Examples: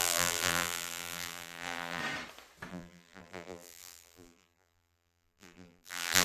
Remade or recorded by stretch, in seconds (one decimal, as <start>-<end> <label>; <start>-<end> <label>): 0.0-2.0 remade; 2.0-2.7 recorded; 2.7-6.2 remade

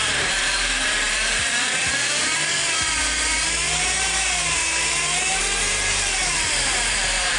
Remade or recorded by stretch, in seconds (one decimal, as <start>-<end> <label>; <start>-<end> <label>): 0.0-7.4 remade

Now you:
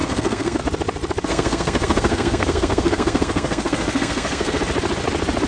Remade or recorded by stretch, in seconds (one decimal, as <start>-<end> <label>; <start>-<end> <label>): 0.0-0.6 remade; 0.6-1.3 recorded; 1.3-4.6 remade; 4.6-5.5 recorded

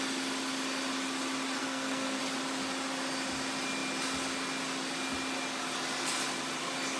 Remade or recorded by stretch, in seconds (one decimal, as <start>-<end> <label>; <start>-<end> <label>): 0.0-1.6 recorded; 1.6-2.2 remade; 2.2-7.0 recorded

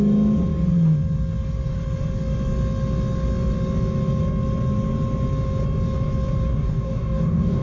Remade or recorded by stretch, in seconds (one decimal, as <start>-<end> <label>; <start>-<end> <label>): 0.0-6.5 recorded; 6.5-7.6 remade

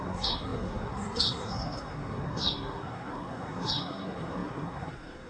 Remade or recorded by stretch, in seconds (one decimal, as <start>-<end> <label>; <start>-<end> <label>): 0.0-5.3 remade